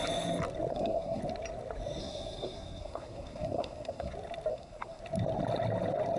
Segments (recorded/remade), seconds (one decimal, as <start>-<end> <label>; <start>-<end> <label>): 0.0-0.7 recorded; 0.7-1.2 remade; 1.2-2.0 recorded; 2.0-4.1 remade; 4.1-4.5 recorded; 4.5-5.0 remade; 5.0-6.2 recorded